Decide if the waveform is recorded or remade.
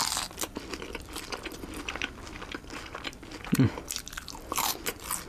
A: recorded